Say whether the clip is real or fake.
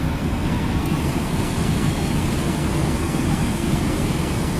fake